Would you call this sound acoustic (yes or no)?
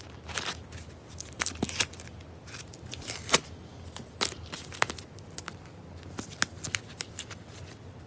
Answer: yes